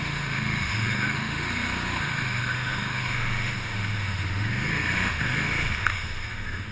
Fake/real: fake